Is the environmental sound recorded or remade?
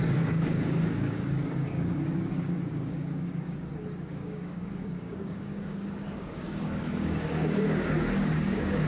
remade